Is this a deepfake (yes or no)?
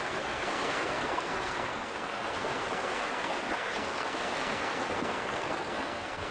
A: yes